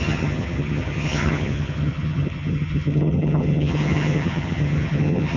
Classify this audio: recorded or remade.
remade